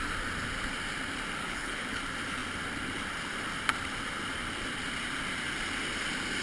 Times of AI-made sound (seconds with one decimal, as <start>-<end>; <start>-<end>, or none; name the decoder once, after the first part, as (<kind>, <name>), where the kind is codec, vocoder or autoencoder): 1.4-2.0 (codec, HILCodec)